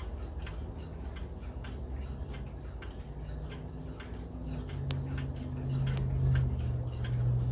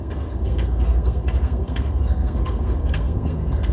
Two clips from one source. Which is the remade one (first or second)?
second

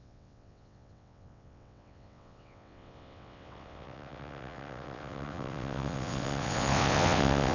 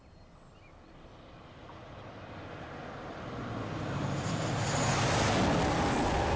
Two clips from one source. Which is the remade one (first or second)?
first